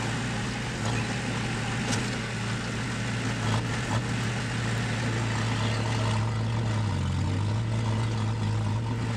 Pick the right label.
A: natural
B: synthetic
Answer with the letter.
A